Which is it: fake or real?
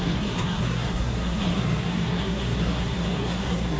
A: fake